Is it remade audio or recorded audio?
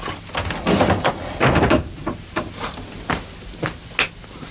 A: recorded